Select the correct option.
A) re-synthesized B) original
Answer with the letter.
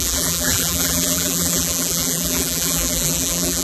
A